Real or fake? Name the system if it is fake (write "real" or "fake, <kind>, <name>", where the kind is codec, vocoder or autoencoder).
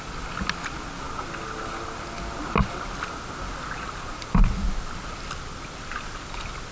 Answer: real